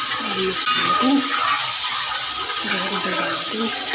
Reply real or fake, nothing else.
real